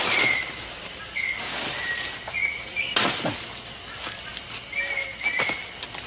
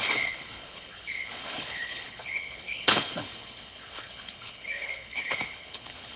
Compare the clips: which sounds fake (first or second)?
second